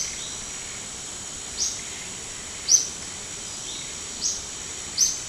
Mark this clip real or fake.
real